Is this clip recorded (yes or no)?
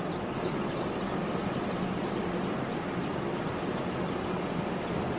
yes